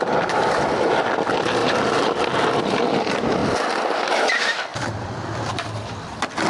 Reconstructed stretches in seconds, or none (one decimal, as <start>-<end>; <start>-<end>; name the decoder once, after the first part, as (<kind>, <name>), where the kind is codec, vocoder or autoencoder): 0.0-1.6 (vocoder, BigVGAN v2); 2.6-6.5